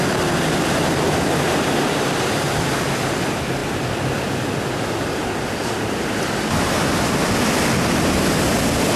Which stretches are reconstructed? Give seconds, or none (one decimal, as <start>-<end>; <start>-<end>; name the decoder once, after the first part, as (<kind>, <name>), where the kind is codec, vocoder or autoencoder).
none